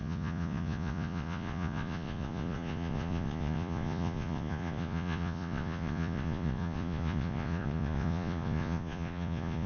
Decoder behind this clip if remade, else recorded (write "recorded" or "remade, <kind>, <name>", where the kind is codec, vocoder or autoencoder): remade, vocoder, Vocos